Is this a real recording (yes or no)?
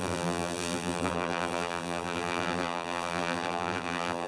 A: no